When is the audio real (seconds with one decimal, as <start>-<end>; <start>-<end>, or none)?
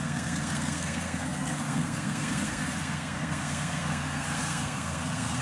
none